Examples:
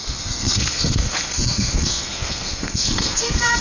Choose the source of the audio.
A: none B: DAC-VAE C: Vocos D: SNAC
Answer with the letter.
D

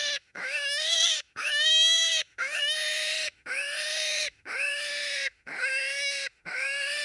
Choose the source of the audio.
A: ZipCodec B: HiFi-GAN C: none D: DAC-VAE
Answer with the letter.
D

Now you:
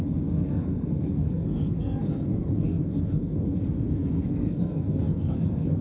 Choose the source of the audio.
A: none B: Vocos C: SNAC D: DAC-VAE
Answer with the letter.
C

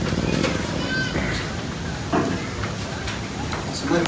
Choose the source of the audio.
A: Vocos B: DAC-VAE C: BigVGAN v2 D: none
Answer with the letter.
D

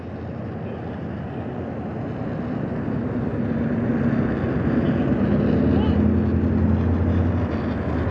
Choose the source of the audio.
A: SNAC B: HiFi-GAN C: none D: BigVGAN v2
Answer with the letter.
C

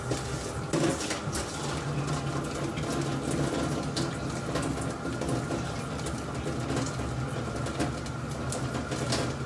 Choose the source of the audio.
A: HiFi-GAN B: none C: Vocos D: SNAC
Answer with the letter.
B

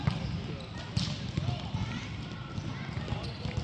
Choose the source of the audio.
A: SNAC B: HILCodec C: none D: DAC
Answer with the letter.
C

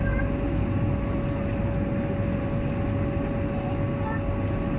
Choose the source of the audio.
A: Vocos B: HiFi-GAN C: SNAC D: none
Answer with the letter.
D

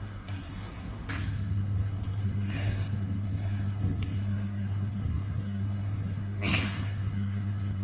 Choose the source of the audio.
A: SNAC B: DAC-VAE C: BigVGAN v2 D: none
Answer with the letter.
A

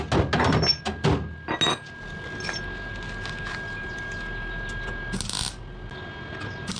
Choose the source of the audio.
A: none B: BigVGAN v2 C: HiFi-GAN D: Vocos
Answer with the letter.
A